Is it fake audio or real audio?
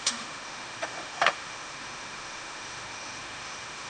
fake